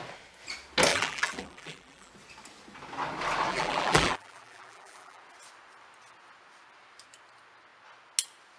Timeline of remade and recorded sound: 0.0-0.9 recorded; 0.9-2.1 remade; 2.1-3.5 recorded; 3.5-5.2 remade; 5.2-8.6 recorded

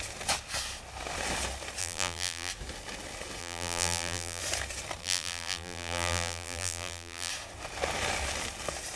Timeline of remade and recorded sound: 0.0-1.8 recorded; 1.8-2.5 remade; 2.5-3.4 recorded; 3.4-4.4 remade; 4.4-5.0 recorded; 5.0-7.3 remade; 7.3-9.0 recorded

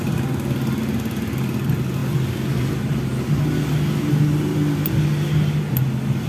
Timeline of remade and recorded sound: 0.0-6.3 recorded

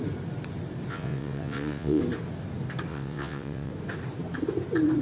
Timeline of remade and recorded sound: 0.0-0.9 recorded; 0.9-2.0 remade; 2.0-2.9 recorded; 2.9-3.7 remade; 3.7-5.0 recorded

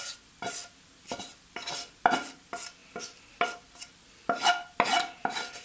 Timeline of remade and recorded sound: 0.0-5.6 recorded

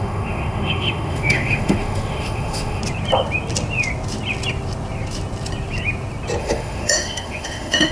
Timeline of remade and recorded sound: 0.0-2.8 remade; 2.8-6.4 recorded; 6.4-7.9 remade

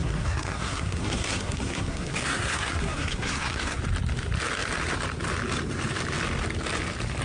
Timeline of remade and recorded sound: 0.0-3.8 remade; 3.8-7.2 recorded